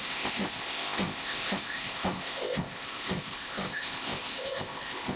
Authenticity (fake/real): fake